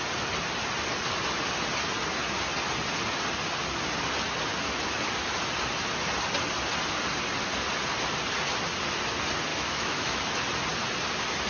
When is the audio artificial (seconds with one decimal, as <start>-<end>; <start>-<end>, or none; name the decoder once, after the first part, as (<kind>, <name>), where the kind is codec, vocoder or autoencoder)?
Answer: 9.5-10.2 (autoencoder, DAC-VAE)